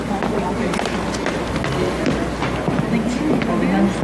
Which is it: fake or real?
real